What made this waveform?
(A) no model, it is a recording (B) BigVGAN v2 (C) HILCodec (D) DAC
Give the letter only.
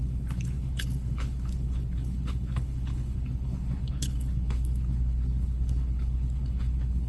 C